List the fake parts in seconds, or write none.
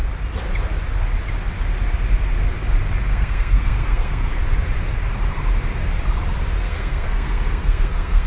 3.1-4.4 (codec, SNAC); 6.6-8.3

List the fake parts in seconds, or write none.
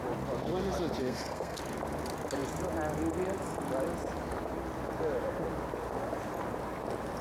1.0-1.6 (codec, SNAC)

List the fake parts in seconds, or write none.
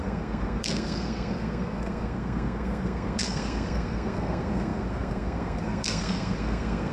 0.0-6.9 (codec, SNAC)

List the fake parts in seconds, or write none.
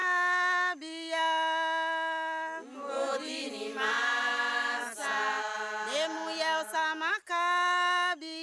none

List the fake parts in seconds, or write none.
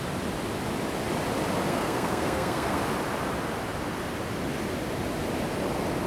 1.7-2.8 (codec, SNAC)